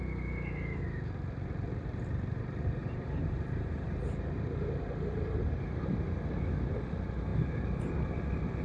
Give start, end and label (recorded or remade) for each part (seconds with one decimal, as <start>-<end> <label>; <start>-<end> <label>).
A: 0.0-2.8 recorded; 2.8-5.8 remade; 5.8-8.6 recorded